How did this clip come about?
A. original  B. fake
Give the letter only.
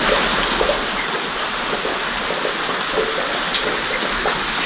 A